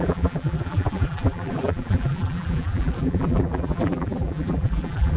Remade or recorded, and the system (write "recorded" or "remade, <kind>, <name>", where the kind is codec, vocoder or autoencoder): remade, vocoder, BigVGAN v2